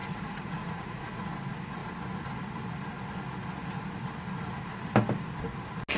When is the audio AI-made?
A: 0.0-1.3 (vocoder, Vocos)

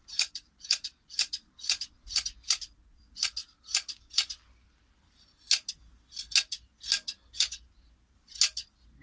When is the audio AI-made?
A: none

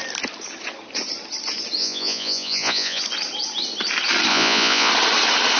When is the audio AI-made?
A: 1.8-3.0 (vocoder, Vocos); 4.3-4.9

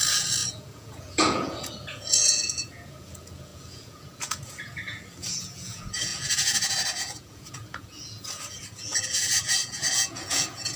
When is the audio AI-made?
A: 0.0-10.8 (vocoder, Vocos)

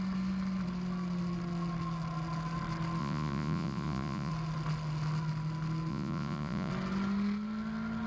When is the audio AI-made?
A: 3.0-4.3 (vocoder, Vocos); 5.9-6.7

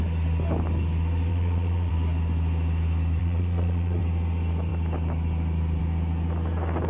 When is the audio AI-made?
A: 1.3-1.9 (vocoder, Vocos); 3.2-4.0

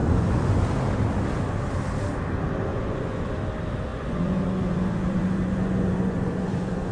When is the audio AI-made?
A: 0.0-0.6 (vocoder, Vocos); 2.7-3.3; 3.9-6.9

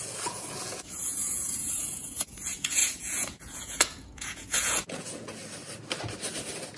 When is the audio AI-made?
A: 0.0-5.4 (vocoder, Vocos)